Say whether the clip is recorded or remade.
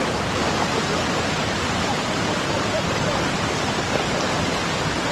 recorded